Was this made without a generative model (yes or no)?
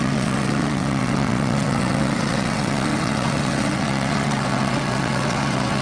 no